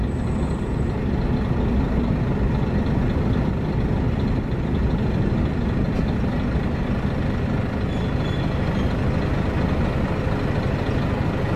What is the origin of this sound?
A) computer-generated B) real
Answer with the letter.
B